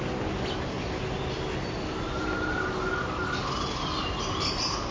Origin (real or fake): real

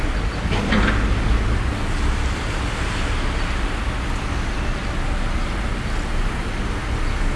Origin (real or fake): real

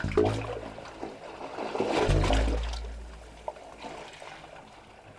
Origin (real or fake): real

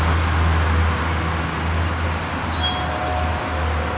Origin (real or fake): real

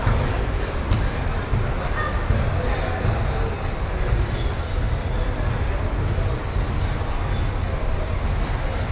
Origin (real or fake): real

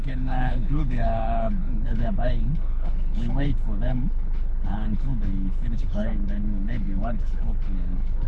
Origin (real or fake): fake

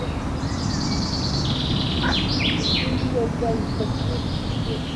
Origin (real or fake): real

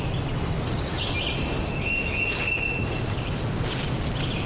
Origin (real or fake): real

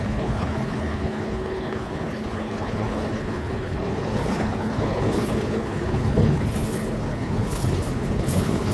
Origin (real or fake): fake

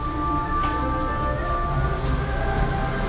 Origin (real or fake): real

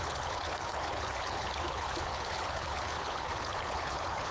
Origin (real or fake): fake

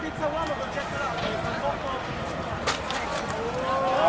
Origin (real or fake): real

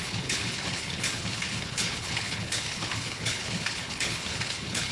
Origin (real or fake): fake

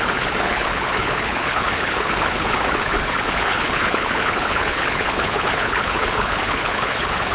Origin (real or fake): fake